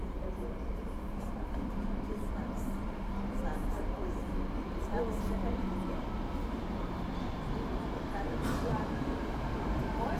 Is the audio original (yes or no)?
no